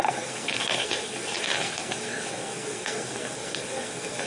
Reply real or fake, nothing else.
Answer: fake